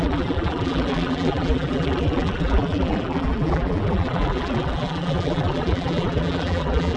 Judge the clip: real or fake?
fake